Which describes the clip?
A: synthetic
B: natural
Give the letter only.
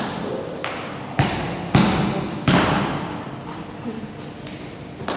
B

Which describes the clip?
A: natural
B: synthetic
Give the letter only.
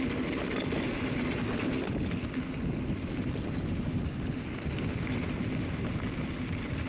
A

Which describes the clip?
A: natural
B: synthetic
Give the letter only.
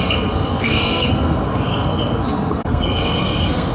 B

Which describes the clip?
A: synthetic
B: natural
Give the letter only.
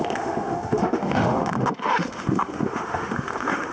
A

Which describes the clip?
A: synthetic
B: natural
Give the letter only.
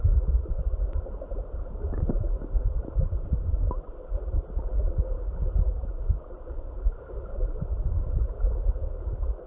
B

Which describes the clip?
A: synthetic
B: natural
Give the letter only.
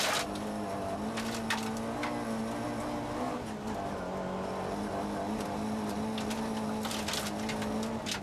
B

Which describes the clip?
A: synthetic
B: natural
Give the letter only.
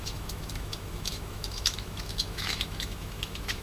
A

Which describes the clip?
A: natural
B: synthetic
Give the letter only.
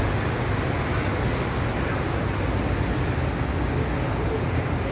A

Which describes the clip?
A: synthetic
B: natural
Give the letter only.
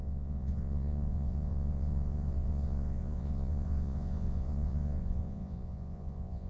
A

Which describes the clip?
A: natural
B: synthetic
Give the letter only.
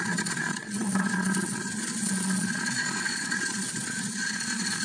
B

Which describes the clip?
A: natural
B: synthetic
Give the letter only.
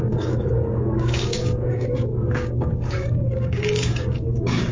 B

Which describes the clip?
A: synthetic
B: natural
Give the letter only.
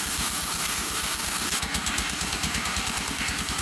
A